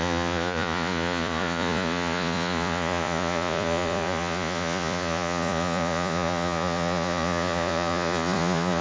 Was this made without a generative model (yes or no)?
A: no